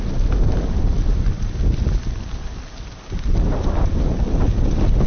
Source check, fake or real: real